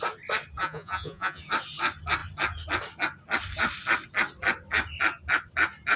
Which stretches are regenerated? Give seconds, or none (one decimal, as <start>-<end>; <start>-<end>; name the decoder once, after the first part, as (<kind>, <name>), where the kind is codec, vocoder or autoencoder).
0.6-1.4 (vocoder, Vocos)